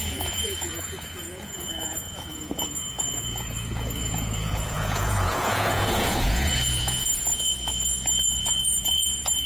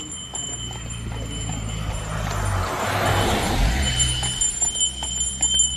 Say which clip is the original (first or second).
second